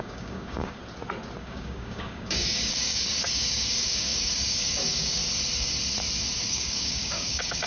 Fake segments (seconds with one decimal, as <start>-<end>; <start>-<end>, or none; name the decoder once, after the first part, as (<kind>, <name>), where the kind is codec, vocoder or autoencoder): 0.0-0.8 (codec, DAC); 1.4-5.2; 6.4-7.7